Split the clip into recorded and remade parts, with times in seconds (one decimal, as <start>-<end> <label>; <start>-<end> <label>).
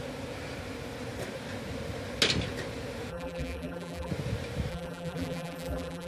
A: 0.0-3.1 recorded; 3.1-4.1 remade; 4.1-4.7 recorded; 4.7-6.1 remade